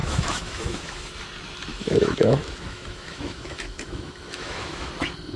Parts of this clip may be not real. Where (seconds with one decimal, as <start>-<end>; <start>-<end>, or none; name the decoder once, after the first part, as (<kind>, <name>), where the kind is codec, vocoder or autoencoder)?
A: 0.0-1.1 (autoencoder, DAC-VAE); 1.7-4.9